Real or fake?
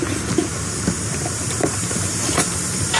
real